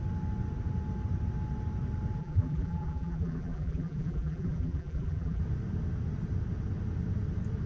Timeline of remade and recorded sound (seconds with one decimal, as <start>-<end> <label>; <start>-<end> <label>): 0.0-2.2 recorded; 2.2-5.4 remade; 5.4-7.7 recorded